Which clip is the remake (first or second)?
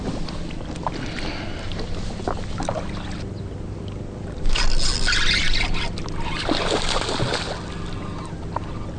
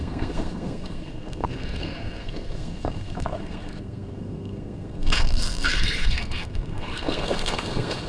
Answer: second